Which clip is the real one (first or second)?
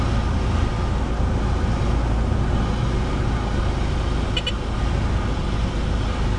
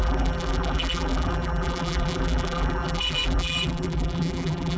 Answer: first